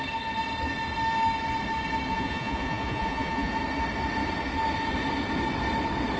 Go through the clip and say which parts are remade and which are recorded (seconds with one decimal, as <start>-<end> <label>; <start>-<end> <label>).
0.0-2.1 recorded; 2.1-3.5 remade; 3.5-6.2 recorded